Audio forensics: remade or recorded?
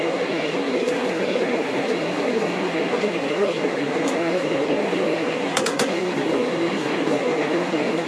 remade